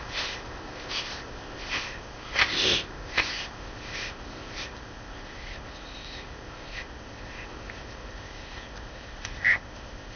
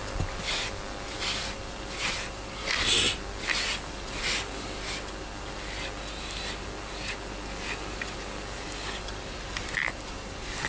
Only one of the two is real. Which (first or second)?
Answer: second